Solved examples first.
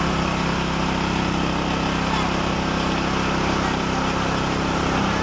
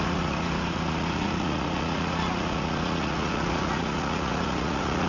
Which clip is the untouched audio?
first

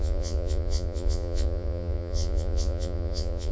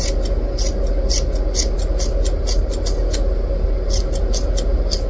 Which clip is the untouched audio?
second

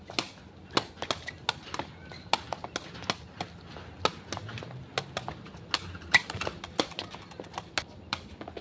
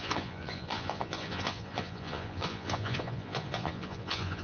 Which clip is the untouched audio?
first